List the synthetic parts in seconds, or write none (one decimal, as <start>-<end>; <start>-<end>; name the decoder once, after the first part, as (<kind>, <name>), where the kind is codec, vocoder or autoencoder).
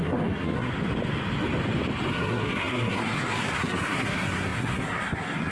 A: 0.0-0.7 (codec, SNAC); 2.1-5.5